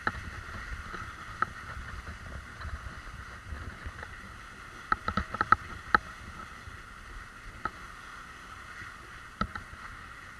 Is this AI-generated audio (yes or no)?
no